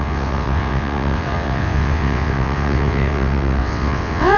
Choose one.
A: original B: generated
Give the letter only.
B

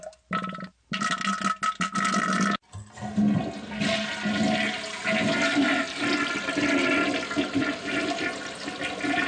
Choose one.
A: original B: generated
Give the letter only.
A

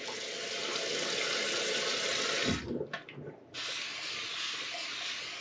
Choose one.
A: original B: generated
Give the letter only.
A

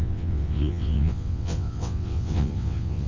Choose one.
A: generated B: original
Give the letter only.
A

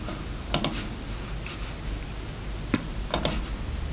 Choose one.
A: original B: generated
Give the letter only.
A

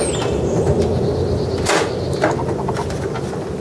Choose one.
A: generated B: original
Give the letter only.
B